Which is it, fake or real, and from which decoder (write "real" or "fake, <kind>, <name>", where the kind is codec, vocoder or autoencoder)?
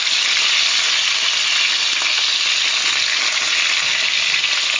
real